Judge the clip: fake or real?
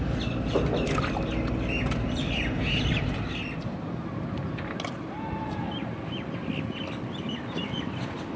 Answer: real